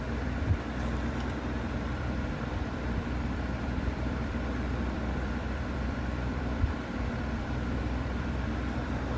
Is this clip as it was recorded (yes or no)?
no